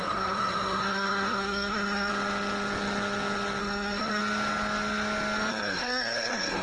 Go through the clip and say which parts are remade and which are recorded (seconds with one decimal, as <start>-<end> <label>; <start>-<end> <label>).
0.0-2.1 remade; 2.1-3.6 recorded; 3.6-4.2 remade; 4.2-5.5 recorded; 5.5-6.6 remade

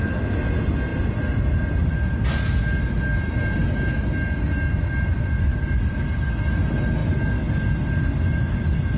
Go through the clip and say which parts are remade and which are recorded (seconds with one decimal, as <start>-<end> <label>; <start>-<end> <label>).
0.0-9.0 recorded

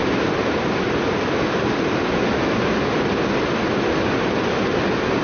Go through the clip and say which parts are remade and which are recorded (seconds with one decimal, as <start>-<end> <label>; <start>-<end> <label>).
0.0-5.2 recorded

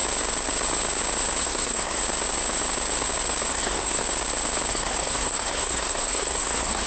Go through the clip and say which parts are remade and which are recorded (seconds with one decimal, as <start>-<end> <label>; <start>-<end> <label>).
0.0-1.4 recorded; 1.4-2.0 remade; 2.0-3.5 recorded; 3.5-4.0 remade; 4.0-4.7 recorded; 4.7-6.9 remade

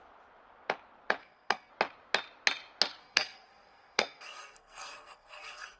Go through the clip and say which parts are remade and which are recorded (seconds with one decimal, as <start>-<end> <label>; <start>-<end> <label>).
0.0-1.2 recorded; 1.2-1.7 remade; 1.7-3.0 recorded; 3.0-5.8 remade